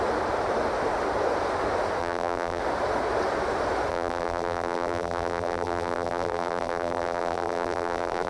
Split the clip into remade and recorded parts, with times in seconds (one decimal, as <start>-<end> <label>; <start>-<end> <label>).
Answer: 0.0-2.0 recorded; 2.0-2.6 remade; 2.6-3.9 recorded; 3.9-8.3 remade